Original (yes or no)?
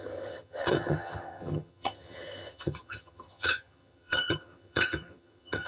no